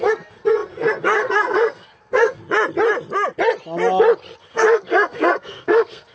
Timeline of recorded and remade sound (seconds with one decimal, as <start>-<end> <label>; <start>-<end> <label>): 0.0-2.4 remade; 2.4-4.4 recorded; 4.4-6.1 remade